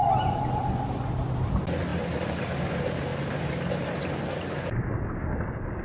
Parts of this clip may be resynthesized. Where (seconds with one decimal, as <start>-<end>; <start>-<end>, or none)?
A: none